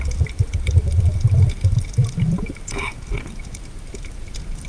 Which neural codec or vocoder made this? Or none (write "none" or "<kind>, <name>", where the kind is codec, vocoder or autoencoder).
none